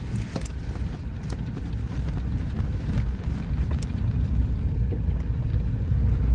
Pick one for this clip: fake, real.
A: real